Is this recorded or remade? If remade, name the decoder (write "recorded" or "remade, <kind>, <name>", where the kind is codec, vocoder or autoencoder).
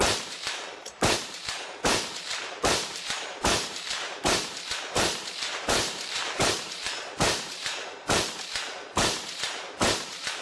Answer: remade, vocoder, BigVGAN v2